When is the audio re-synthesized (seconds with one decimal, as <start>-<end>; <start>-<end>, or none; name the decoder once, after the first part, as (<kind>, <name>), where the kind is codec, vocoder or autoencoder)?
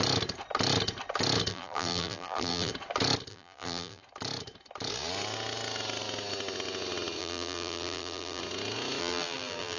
1.5-2.7 (vocoder, BigVGAN v2); 3.3-4.0; 7.2-8.4; 9.0-9.8